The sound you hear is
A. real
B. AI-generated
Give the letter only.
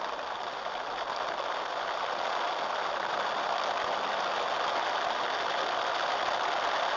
A